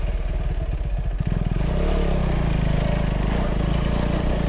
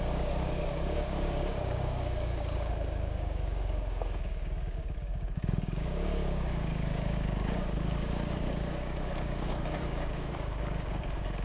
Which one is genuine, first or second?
first